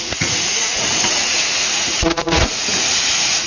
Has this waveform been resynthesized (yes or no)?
yes